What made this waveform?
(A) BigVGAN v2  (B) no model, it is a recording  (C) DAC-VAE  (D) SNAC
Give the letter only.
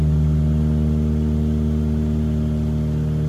B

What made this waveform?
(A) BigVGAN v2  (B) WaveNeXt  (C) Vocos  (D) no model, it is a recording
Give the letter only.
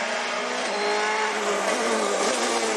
D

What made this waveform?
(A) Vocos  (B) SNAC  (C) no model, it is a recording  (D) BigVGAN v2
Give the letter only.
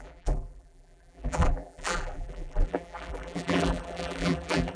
D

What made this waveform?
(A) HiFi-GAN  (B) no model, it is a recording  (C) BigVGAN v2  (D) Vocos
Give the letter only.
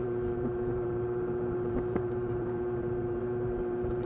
C